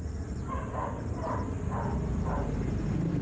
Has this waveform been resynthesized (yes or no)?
no